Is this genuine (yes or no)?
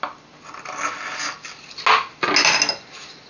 yes